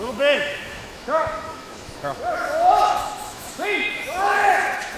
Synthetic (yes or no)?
yes